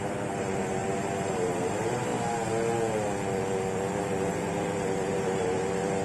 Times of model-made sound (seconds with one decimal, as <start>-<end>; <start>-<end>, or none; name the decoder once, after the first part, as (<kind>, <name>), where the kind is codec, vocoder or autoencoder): 0.0-2.1 (vocoder, BigVGAN v2); 4.1-6.0